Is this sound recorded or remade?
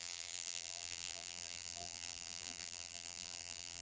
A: remade